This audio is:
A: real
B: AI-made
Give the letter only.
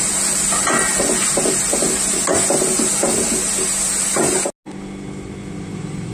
A